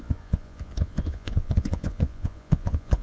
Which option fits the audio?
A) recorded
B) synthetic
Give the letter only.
B